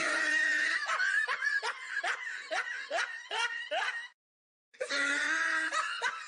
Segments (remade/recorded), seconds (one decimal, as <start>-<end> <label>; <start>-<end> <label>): 0.0-3.9 remade; 3.9-4.7 recorded; 4.7-6.3 remade